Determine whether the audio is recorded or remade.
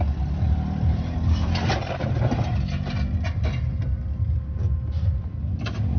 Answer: recorded